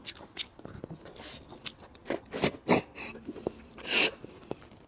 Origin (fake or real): real